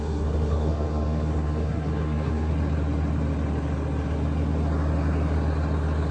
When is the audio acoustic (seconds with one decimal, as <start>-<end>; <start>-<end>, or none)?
2.5-6.1